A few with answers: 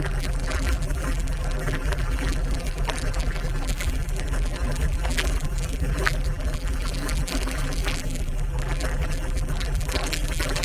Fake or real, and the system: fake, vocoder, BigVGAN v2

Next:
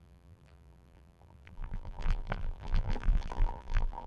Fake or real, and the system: fake, vocoder, BigVGAN v2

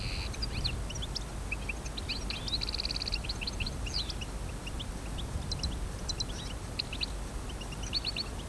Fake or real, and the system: real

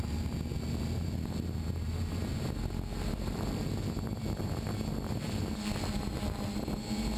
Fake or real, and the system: real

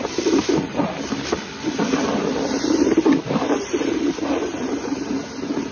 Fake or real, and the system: fake, vocoder, BigVGAN v2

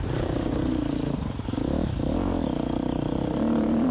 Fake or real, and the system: fake, vocoder, BigVGAN v2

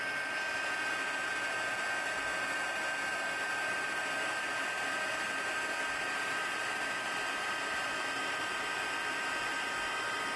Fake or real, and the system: real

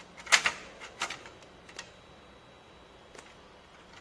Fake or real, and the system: real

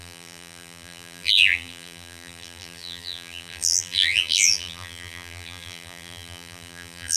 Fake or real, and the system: fake, vocoder, BigVGAN v2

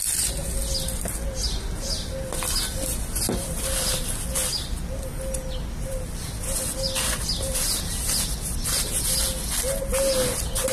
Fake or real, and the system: real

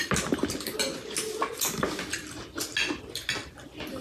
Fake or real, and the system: real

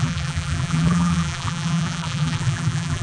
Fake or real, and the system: fake, vocoder, BigVGAN v2